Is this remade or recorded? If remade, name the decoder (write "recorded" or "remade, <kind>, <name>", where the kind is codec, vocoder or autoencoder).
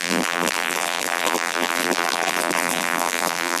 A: remade, vocoder, BigVGAN v2